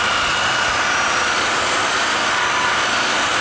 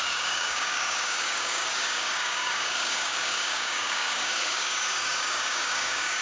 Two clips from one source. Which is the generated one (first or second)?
second